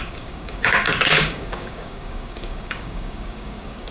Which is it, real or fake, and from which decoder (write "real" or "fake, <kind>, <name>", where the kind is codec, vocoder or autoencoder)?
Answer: fake, codec, DAC